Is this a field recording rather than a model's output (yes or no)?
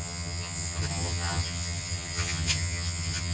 no